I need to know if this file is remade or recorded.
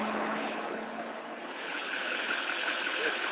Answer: remade